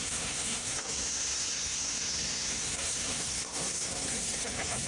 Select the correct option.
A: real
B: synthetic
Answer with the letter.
B